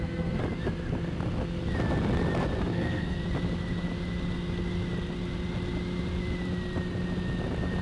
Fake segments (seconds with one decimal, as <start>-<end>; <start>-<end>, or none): 0.0-0.4; 2.7-3.2